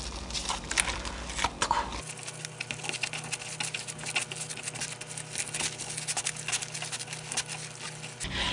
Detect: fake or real real